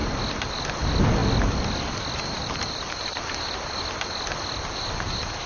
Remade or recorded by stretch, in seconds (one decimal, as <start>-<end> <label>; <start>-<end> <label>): 0.0-5.5 recorded